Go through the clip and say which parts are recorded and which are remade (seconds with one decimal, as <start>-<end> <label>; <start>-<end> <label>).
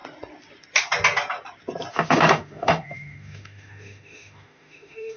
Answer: 0.0-1.9 recorded; 1.9-5.2 remade